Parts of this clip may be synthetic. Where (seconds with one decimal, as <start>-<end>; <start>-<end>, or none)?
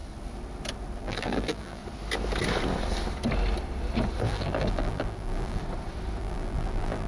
1.0-1.8; 4.2-5.6; 6.2-7.1